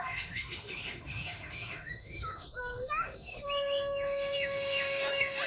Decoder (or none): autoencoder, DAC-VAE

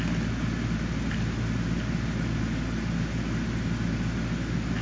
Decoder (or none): none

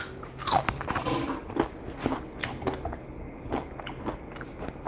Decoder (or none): none